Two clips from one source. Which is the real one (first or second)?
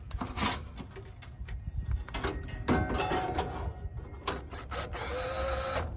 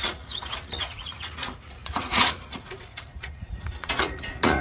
first